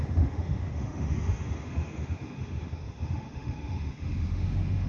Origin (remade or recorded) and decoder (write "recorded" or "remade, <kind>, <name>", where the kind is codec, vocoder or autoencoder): remade, autoencoder, DAC-VAE